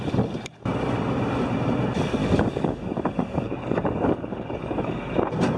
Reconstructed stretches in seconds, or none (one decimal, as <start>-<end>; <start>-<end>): 2.2-5.0